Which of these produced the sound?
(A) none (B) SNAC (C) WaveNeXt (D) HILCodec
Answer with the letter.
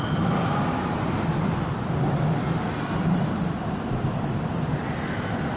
A